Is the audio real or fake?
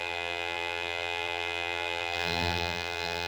fake